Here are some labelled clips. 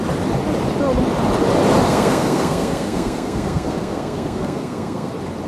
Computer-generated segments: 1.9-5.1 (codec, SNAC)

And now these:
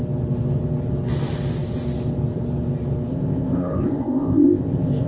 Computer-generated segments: 3.1-5.1 (codec, ZipCodec)